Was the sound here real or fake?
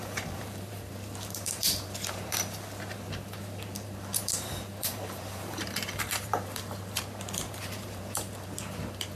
fake